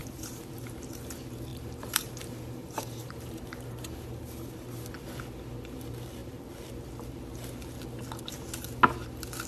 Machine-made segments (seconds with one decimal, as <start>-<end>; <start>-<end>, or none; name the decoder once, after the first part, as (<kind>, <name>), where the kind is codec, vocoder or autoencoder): 0.0-0.5 (vocoder, BigVGAN v2); 1.5-4.2